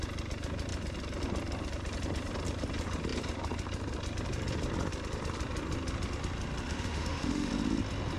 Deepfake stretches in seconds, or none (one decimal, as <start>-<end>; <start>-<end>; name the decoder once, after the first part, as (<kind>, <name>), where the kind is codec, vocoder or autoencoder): 6.7-7.5 (autoencoder, DAC-VAE)